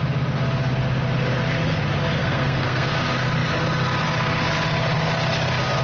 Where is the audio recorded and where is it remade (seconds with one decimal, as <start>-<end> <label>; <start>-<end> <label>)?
0.0-2.2 recorded; 2.2-2.9 remade; 2.9-5.8 recorded